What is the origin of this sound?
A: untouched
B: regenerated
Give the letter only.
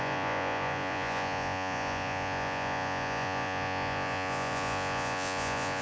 B